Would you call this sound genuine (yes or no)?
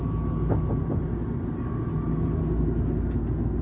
yes